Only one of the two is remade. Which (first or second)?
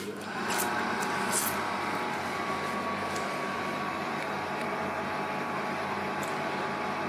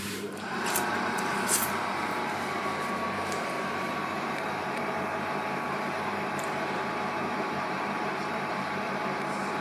second